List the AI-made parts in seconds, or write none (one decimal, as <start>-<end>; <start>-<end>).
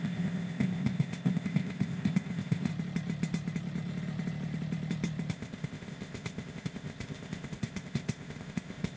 0.0-2.7; 5.3-9.0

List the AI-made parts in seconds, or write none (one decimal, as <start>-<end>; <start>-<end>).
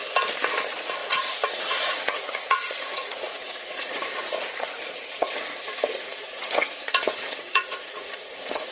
1.0-5.3; 5.8-8.7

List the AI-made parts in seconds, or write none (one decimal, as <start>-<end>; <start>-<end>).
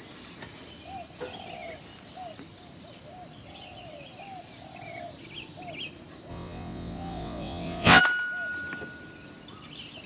6.3-8.0